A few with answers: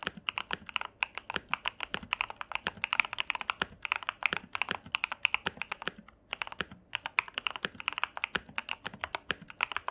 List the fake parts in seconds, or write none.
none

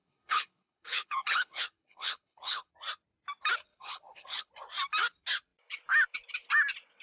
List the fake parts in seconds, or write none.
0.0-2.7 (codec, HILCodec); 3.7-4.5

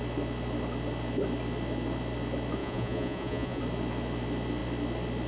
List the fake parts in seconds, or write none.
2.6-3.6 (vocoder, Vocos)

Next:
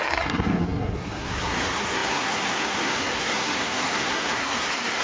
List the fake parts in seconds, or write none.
0.0-5.0 (codec, SNAC)

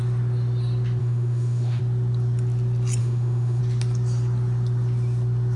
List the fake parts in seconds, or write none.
1.0-1.8 (autoencoder, DAC-VAE); 3.0-3.6

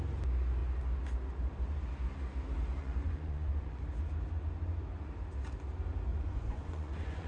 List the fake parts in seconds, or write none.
2.8-3.8 (vocoder, Vocos); 6.1-7.3

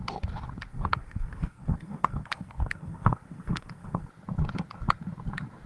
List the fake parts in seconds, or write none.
0.7-4.1 (codec, SNAC)